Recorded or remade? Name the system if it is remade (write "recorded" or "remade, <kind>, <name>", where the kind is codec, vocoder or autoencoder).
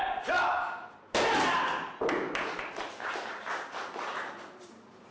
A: recorded